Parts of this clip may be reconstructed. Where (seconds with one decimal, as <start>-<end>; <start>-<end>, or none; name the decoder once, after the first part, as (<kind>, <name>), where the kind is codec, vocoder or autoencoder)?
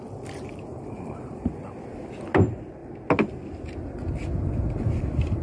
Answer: 0.7-1.5 (vocoder, BigVGAN v2)